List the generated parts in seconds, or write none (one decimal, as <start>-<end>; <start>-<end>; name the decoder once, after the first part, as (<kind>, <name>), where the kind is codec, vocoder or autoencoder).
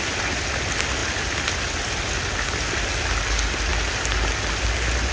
none